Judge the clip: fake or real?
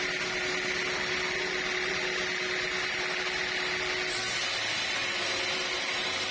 real